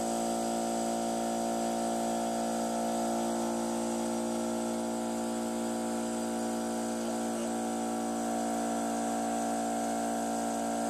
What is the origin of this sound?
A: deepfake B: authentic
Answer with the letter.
B